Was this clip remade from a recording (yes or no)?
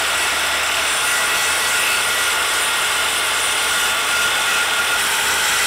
no